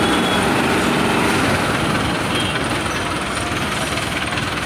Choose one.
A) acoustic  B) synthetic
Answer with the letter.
B